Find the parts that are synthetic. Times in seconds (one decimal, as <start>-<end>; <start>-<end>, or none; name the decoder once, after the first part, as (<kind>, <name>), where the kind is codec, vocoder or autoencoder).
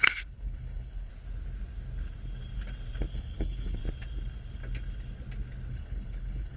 0.0-1.1 (codec, HILCodec); 3.1-3.8; 5.7-6.6